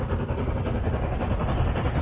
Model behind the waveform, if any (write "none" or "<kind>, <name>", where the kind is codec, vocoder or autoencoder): none